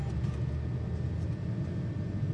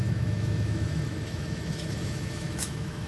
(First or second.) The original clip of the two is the first